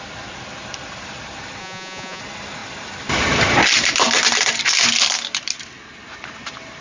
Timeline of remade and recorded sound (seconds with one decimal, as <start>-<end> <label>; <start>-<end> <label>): 0.0-1.6 recorded; 1.6-2.2 remade; 2.2-6.8 recorded